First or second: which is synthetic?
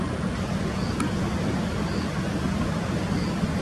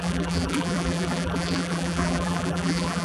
second